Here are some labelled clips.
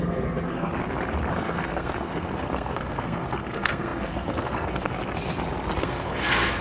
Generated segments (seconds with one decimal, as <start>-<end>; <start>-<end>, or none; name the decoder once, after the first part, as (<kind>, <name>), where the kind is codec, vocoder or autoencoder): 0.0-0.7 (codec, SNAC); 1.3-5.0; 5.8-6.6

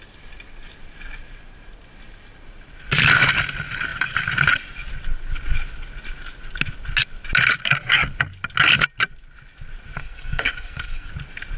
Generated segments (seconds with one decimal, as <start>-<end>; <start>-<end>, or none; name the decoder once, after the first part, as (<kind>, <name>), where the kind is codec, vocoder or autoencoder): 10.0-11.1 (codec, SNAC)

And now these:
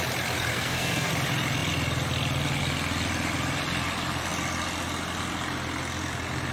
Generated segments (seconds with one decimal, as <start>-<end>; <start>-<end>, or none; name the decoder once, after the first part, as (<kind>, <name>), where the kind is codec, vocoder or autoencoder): 0.5-1.1 (codec, SNAC)